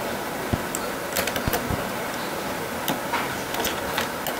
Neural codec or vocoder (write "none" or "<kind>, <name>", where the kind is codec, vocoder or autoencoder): none